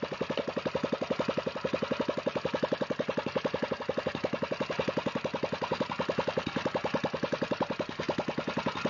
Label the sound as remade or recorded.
recorded